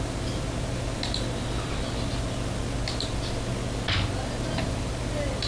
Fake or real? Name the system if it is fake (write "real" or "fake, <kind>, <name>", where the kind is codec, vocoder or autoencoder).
real